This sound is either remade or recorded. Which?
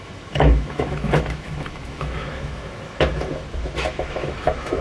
remade